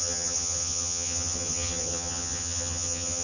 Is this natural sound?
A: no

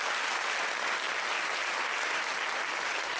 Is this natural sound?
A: yes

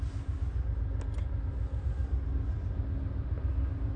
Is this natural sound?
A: yes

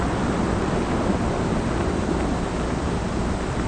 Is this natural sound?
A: yes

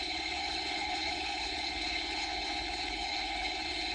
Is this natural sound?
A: no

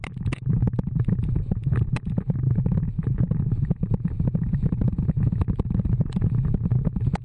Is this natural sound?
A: yes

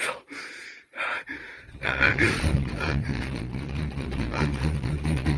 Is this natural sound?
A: no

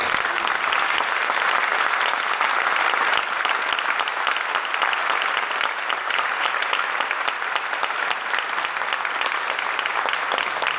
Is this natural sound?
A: yes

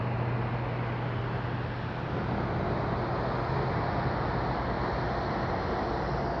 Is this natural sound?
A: yes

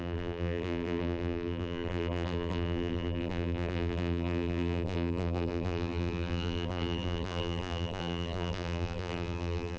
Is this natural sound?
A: no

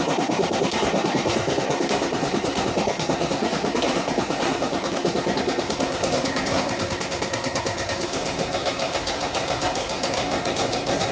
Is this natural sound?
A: no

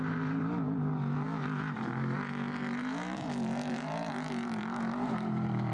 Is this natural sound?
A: no